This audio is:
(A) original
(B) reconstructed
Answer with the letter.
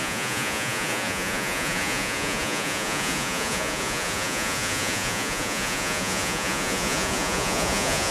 B